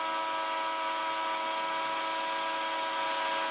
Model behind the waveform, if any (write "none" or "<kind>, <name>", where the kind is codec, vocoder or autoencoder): none